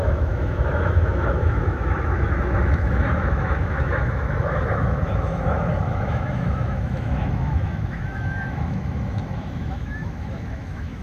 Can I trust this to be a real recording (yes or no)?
no